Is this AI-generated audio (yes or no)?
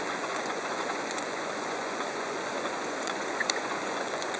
yes